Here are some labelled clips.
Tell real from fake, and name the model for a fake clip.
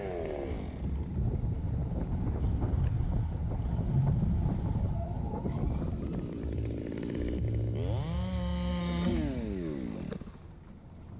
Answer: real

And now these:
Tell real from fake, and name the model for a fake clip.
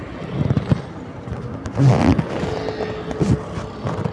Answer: real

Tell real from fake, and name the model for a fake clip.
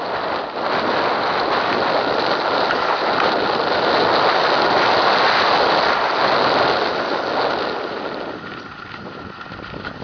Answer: real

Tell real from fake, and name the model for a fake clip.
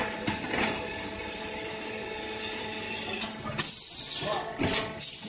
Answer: real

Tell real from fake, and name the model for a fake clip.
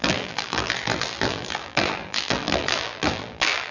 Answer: fake, vocoder, BigVGAN v2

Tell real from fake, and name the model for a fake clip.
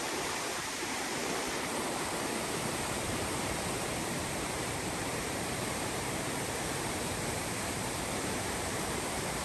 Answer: fake, vocoder, BigVGAN v2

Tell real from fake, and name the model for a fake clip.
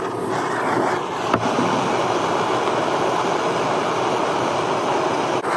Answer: real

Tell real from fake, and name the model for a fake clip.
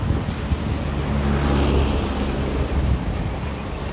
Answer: real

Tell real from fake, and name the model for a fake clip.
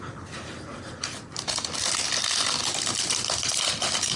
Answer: fake, vocoder, BigVGAN v2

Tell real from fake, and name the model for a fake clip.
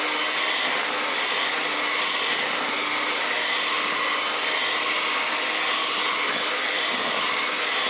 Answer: real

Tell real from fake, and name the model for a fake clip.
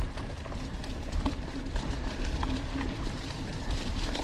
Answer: fake, vocoder, BigVGAN v2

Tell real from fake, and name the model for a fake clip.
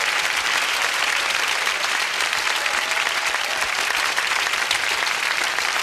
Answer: fake, vocoder, BigVGAN v2